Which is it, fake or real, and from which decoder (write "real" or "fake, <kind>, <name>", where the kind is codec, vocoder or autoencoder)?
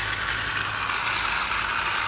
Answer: real